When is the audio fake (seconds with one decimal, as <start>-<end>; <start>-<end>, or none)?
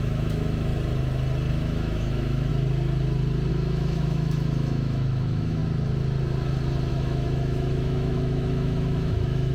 0.0-0.7; 1.5-2.5; 3.5-5.6; 6.9-9.5